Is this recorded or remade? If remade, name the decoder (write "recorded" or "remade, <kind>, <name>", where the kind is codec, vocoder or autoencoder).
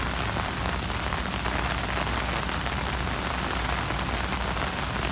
recorded